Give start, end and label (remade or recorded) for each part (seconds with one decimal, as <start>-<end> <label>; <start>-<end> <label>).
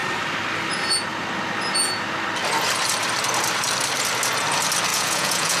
0.0-4.9 recorded; 4.9-5.6 remade